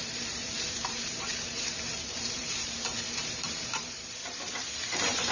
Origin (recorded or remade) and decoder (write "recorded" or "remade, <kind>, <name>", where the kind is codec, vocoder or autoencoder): remade, vocoder, BigVGAN v2